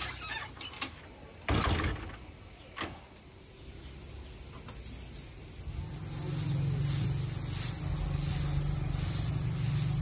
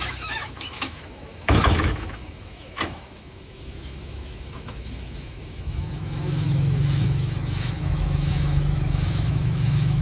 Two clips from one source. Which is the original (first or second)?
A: first